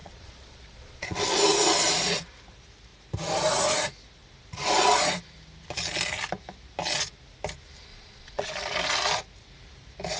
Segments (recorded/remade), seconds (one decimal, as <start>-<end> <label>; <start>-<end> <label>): 0.0-1.2 remade; 1.2-7.9 recorded; 7.9-8.5 remade; 8.5-10.2 recorded